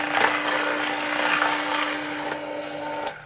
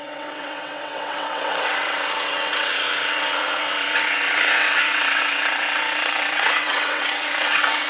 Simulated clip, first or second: second